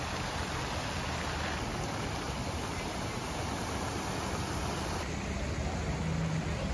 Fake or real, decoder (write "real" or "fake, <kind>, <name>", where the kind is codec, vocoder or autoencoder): real